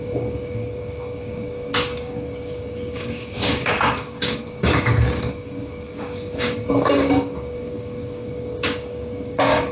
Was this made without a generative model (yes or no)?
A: no